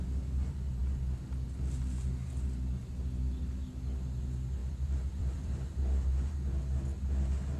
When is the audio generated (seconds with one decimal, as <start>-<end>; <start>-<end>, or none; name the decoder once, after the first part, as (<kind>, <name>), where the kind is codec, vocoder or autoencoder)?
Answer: 4.6-5.7 (vocoder, BigVGAN v2)